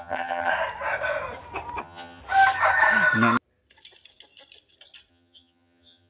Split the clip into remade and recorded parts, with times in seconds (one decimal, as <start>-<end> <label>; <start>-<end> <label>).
0.0-0.5 remade; 0.5-1.8 recorded; 1.8-2.2 remade; 2.2-5.1 recorded; 5.1-6.1 remade